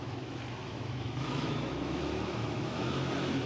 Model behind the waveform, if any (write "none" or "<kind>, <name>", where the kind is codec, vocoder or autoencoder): autoencoder, DAC-VAE